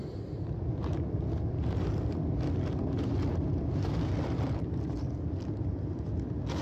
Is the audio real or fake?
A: real